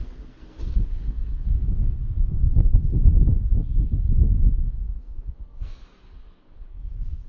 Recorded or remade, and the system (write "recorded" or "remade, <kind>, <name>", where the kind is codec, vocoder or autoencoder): remade, codec, SNAC